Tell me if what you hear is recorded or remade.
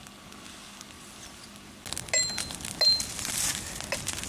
recorded